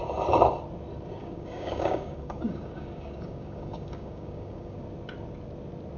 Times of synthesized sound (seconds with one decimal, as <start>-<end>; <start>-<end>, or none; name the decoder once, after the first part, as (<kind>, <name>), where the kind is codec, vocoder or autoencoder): 1.2-4.8 (codec, DAC)